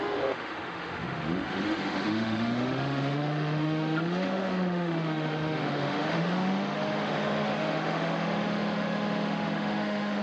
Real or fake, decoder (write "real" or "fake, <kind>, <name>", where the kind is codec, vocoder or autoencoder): fake, autoencoder, DAC-VAE